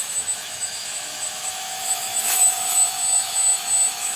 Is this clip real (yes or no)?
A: no